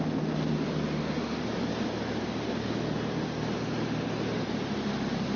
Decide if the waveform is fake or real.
real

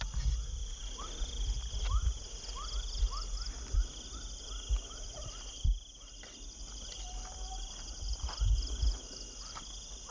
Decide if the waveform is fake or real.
real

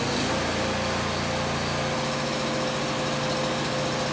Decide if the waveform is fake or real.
real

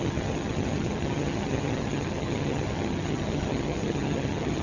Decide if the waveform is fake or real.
fake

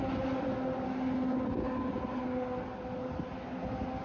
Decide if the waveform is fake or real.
real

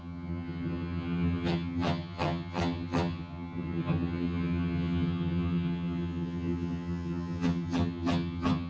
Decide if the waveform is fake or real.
fake